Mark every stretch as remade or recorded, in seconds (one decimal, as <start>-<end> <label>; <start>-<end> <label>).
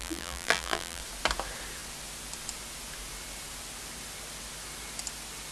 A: 0.0-1.0 remade; 1.0-5.5 recorded